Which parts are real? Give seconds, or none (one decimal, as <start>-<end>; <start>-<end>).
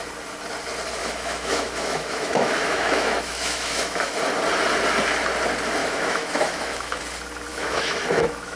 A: 0.0-1.0; 4.2-5.8; 7.0-7.5